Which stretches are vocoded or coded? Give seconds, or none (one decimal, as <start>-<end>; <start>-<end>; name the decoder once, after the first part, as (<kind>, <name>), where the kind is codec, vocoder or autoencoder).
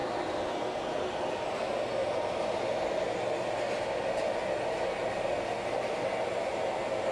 none